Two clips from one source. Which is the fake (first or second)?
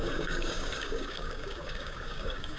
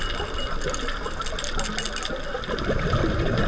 first